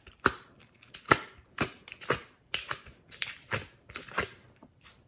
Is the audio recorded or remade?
remade